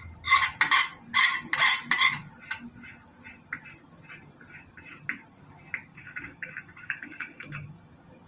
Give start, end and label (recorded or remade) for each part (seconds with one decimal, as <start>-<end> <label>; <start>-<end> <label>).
0.0-5.9 recorded; 5.9-7.9 remade; 7.9-8.3 recorded

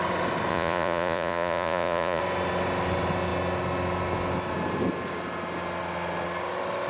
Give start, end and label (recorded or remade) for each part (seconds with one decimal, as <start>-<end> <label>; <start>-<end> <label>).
0.0-0.5 recorded; 0.5-2.2 remade; 2.2-6.9 recorded

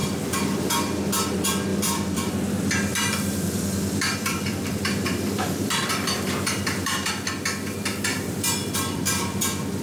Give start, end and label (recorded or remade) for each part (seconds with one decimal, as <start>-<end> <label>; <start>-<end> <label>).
0.0-1.0 remade; 1.0-1.7 recorded; 1.7-2.3 remade; 2.3-2.9 recorded; 2.9-7.1 remade; 7.1-8.1 recorded; 8.1-9.0 remade; 9.0-9.8 recorded

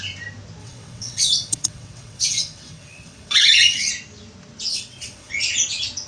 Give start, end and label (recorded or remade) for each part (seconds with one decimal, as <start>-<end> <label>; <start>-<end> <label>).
0.0-0.6 recorded; 0.6-3.9 remade; 3.9-4.7 recorded; 4.7-5.3 remade; 5.3-6.1 recorded